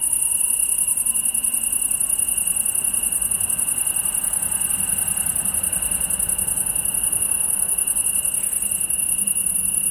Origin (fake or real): real